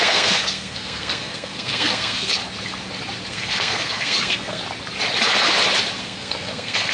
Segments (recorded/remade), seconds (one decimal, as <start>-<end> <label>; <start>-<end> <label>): 0.0-2.4 remade; 2.4-3.3 recorded; 3.3-4.6 remade; 4.6-6.0 recorded; 6.0-6.9 remade